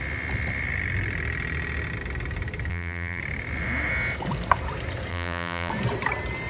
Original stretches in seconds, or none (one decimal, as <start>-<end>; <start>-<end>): 0.0-2.7; 3.2-5.1; 5.7-6.5